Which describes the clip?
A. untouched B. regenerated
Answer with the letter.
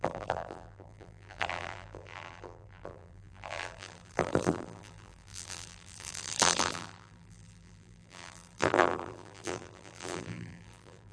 B